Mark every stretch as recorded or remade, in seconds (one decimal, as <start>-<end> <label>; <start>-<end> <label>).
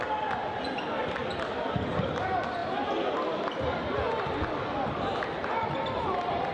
0.0-1.2 recorded; 1.2-1.9 remade; 1.9-5.4 recorded; 5.4-6.5 remade